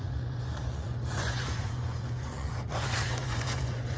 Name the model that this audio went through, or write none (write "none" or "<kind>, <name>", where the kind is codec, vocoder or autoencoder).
vocoder, Vocos